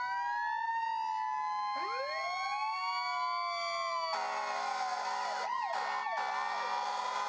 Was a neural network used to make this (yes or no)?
no